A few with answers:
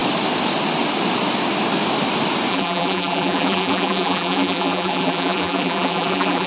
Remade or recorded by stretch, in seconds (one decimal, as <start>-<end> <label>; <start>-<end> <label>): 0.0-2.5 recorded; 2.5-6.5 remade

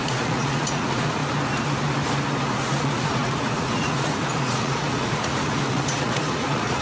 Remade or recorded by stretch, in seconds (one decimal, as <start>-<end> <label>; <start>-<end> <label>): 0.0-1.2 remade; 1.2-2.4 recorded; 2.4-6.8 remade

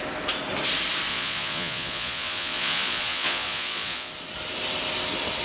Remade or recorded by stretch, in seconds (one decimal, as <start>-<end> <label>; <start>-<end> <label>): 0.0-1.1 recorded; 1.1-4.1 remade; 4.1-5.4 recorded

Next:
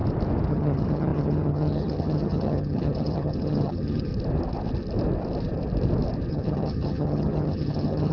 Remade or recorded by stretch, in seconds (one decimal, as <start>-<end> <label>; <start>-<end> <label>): 0.0-0.5 recorded; 0.5-4.1 remade; 4.1-6.3 recorded; 6.3-8.1 remade

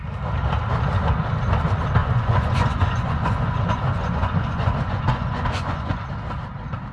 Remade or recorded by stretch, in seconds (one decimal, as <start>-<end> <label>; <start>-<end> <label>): 0.0-2.0 recorded; 2.0-6.1 remade; 6.1-6.9 recorded

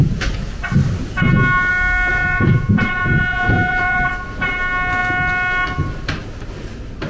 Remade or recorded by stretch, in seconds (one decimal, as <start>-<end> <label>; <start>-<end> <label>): 0.0-2.1 recorded; 2.1-4.1 remade; 4.1-7.1 recorded